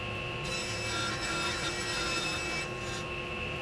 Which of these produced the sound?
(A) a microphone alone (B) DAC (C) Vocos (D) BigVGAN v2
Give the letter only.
A